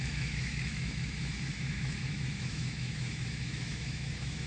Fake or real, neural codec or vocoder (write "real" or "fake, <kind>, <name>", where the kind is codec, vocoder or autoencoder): fake, autoencoder, DAC-VAE